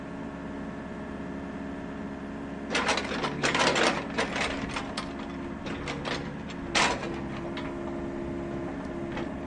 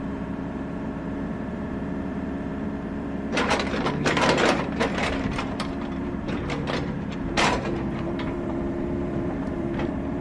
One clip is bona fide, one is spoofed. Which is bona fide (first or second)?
first